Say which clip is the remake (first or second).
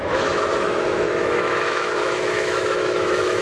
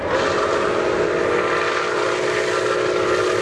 first